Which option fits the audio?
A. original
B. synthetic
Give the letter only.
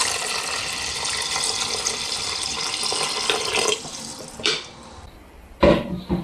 B